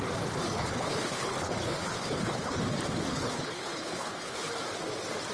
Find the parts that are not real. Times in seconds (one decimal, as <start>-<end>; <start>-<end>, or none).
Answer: 0.4-2.6; 3.1-4.5